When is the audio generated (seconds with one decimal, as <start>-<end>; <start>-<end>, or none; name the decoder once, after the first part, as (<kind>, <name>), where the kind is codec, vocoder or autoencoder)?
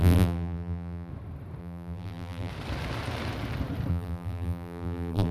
0.0-1.1 (vocoder, BigVGAN v2); 1.6-2.5; 3.9-5.3